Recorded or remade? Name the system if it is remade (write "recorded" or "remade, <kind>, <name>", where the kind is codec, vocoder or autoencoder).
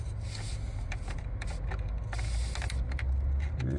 recorded